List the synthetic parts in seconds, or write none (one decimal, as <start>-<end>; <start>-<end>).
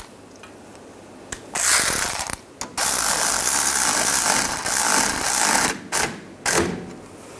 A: 1.7-2.5